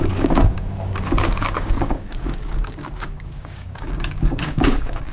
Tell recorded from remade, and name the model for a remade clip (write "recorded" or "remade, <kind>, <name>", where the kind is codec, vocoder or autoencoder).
remade, codec, DAC